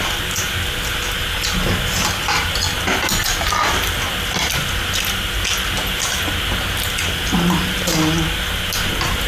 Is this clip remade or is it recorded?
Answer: recorded